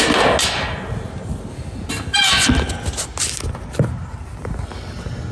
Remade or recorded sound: recorded